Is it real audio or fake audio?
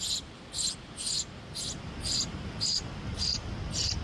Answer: real